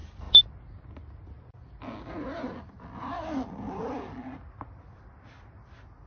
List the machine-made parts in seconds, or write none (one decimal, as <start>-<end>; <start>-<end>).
none